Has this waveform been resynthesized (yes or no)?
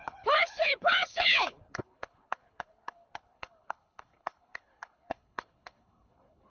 yes